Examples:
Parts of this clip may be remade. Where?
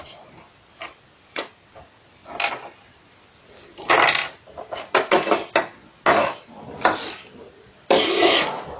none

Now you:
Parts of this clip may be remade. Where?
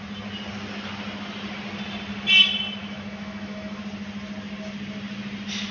2.8-3.8 (autoencoder, DAC-VAE)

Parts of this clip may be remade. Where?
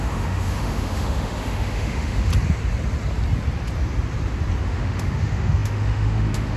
0.0-2.3 (autoencoder, DAC-VAE); 4.6-6.6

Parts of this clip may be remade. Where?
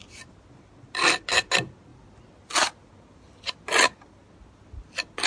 none